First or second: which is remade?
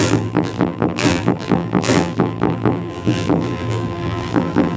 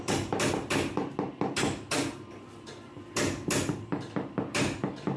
first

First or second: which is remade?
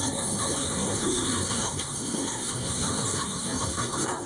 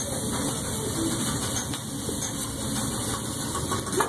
first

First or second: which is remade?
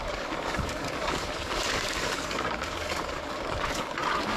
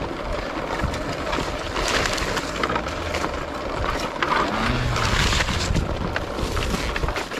first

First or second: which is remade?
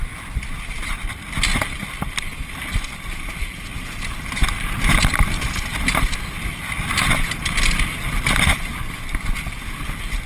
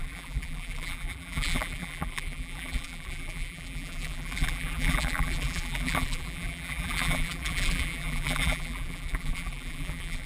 second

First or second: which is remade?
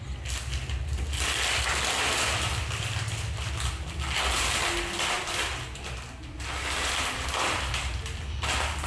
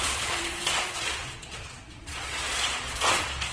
second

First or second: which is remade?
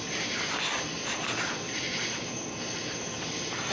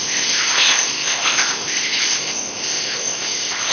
second